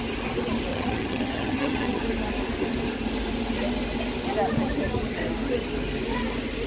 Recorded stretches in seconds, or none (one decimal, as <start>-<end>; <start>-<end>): 0.0-0.7; 2.0-6.7